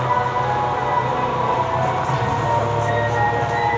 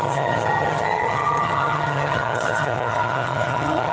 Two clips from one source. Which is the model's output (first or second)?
second